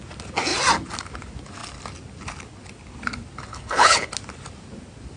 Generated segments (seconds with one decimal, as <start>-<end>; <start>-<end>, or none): 3.5-4.1